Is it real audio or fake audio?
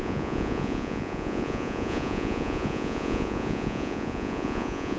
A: fake